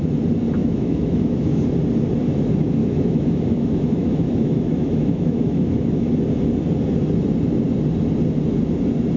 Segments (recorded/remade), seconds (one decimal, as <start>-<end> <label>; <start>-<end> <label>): 0.0-0.6 recorded; 0.6-1.6 remade; 1.6-2.8 recorded; 2.8-6.1 remade; 6.1-9.2 recorded